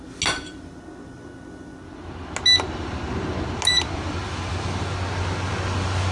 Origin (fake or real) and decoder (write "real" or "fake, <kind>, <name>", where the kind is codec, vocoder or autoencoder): real